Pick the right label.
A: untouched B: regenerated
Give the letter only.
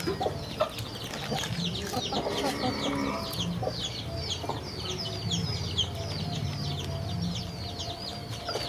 A